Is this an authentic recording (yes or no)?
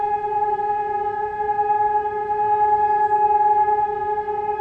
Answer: yes